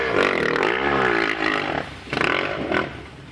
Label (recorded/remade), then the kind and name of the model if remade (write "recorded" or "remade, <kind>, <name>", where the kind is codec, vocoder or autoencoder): recorded